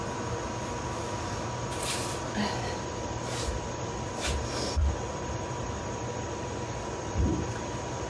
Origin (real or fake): real